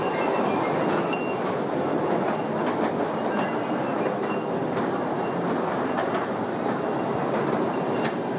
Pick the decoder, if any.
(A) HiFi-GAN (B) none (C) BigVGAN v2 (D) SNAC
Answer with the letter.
B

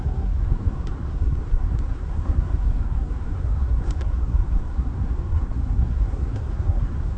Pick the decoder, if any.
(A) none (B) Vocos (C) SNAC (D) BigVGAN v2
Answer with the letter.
C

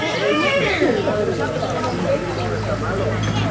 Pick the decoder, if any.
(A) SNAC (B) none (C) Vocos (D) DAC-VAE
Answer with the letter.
B